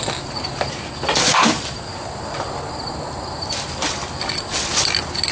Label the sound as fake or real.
fake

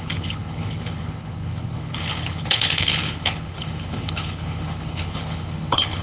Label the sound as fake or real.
fake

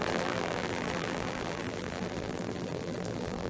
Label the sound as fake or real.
fake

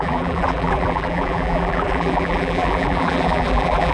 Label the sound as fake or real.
fake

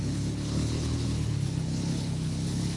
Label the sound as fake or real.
fake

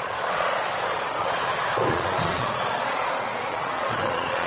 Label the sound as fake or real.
fake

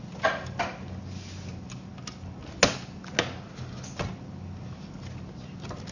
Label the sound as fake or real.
real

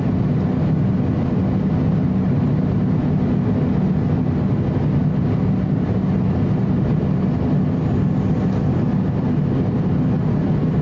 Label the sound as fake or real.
real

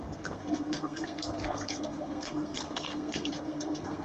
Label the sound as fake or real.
fake